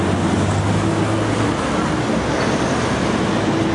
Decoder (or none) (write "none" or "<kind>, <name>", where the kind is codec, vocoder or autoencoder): none